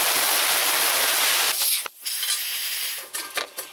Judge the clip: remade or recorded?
recorded